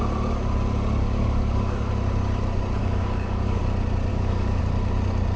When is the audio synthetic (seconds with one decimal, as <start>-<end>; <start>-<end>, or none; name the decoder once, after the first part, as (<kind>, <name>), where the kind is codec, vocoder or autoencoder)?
1.0-1.9 (codec, DAC); 2.8-3.6; 4.1-4.6